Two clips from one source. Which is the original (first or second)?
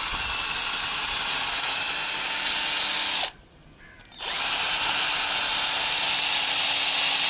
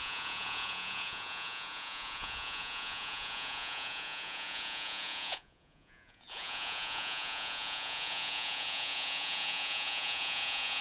first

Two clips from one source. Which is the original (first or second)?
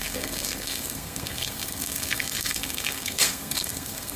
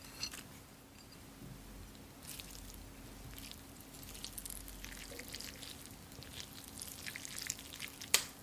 second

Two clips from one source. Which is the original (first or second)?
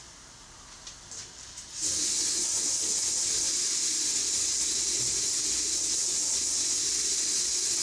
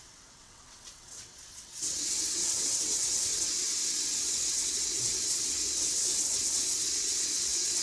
first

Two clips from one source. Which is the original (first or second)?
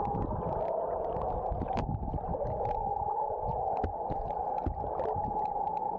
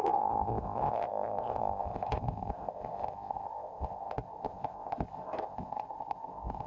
first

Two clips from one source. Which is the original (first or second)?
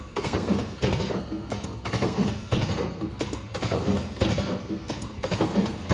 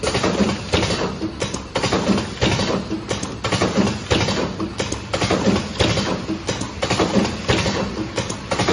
second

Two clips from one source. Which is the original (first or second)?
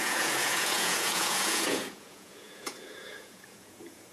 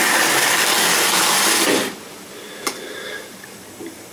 second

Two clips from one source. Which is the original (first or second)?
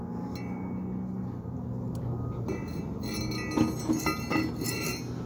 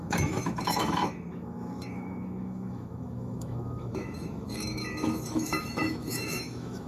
first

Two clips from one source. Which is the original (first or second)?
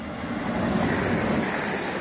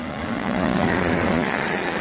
first